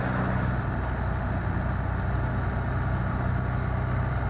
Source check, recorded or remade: recorded